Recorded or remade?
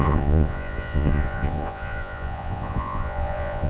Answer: remade